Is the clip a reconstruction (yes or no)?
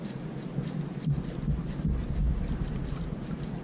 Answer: no